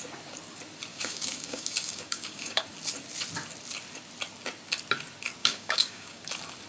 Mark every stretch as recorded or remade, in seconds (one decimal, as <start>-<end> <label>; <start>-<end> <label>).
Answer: 0.0-0.9 recorded; 0.9-2.6 remade; 2.6-5.4 recorded; 5.4-6.2 remade; 6.2-6.7 recorded